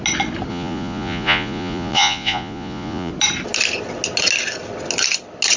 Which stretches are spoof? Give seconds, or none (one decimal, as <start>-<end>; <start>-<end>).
0.5-3.1